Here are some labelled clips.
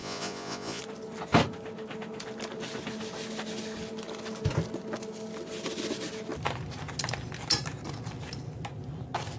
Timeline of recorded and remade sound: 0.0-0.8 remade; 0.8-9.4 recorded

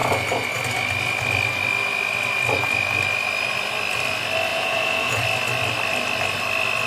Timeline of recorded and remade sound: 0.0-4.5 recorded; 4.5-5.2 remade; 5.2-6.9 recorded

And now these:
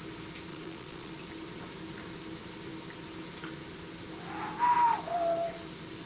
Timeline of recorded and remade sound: 0.0-0.5 recorded; 0.5-1.1 remade; 1.1-6.1 recorded

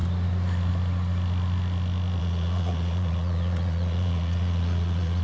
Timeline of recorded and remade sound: 0.0-2.2 recorded; 2.2-5.2 remade